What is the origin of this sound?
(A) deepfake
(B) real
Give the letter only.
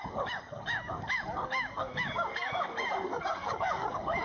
A